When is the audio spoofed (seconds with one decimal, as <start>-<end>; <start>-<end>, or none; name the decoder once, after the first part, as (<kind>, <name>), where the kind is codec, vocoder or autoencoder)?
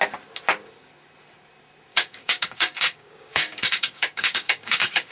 1.9-5.1 (codec, DAC)